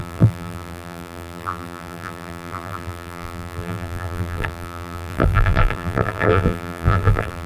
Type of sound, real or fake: fake